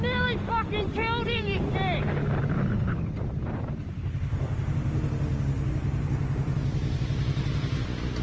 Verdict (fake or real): real